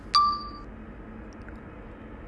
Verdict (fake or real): real